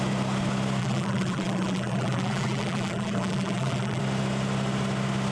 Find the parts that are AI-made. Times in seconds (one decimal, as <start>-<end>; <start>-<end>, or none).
0.8-4.0